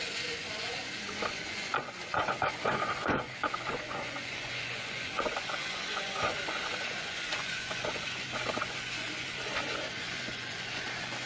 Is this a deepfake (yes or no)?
yes